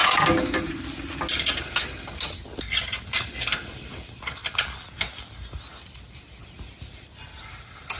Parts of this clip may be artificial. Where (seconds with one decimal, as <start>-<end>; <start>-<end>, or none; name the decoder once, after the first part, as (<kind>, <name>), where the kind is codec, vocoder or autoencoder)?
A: none